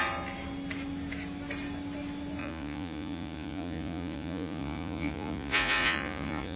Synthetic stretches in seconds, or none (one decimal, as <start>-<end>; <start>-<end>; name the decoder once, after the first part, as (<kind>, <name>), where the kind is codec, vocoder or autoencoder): 2.4-6.6 (vocoder, Vocos)